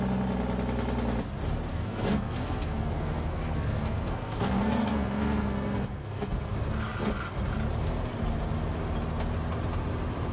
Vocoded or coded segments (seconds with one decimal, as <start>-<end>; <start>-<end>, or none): 1.7-6.5